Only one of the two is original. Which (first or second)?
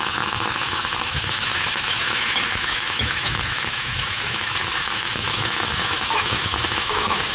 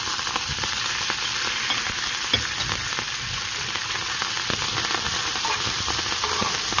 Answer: second